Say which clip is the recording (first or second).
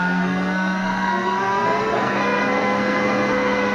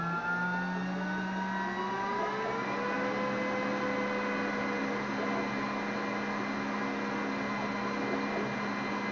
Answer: second